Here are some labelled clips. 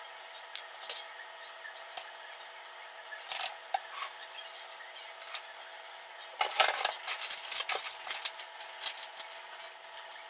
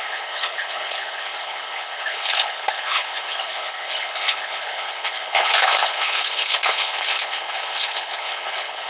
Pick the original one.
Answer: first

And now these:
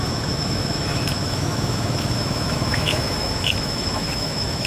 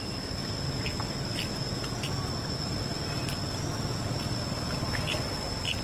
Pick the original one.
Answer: second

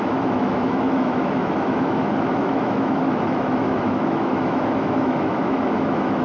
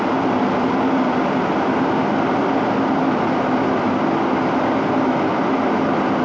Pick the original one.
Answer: second